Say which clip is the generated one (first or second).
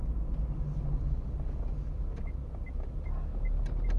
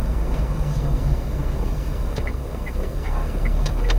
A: second